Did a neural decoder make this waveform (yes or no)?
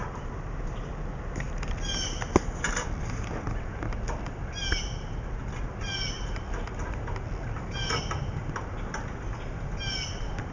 no